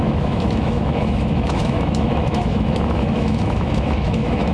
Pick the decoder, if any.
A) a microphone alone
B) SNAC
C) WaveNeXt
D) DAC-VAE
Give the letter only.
D